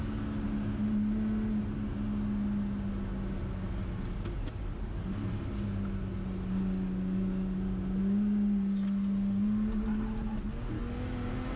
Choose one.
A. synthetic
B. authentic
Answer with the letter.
B